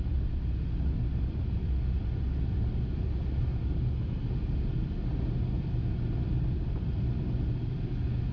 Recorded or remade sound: recorded